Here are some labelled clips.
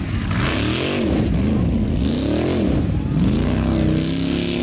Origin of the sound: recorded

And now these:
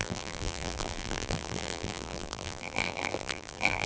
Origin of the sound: remade